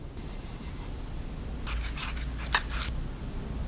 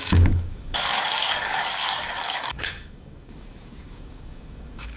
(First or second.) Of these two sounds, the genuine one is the first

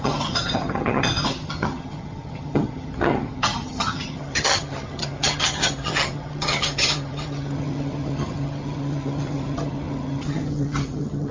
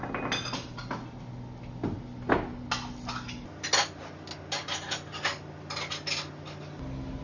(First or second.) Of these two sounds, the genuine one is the second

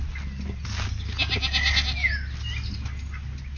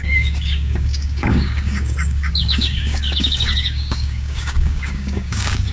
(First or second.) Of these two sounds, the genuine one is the first